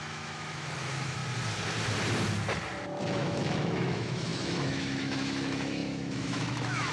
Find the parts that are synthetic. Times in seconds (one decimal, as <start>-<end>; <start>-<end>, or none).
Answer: 0.0-1.2; 3.0-6.9